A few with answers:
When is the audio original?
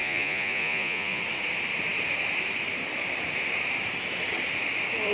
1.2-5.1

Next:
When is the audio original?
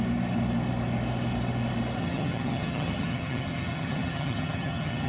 0.0-2.0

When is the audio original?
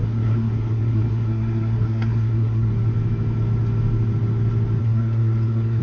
2.7-4.8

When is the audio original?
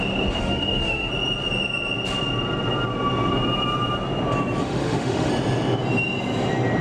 0.0-0.4; 1.1-4.6; 5.3-6.8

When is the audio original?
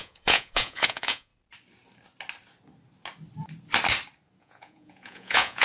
1.3-4.4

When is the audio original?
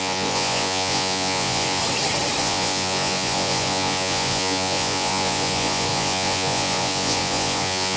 1.8-2.4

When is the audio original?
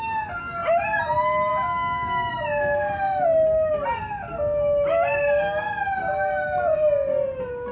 0.0-7.7